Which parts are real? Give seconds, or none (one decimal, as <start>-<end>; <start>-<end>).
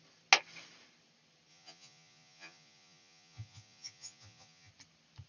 0.0-1.5; 4.7-5.3